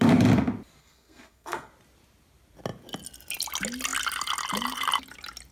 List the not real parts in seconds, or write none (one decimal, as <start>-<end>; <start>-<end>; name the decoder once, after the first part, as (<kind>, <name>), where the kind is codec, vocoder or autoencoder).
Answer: 0.8-1.7 (codec, SNAC)

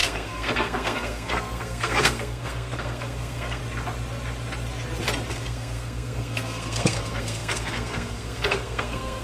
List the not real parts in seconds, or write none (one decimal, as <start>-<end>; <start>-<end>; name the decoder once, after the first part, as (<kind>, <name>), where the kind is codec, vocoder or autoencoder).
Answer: 0.0-3.6 (codec, SNAC); 5.3-9.2